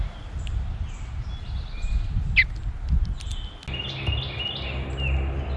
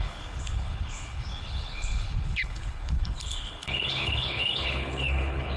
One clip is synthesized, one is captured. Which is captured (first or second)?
first